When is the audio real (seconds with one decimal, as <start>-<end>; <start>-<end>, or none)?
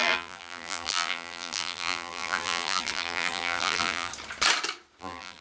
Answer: 4.1-5.0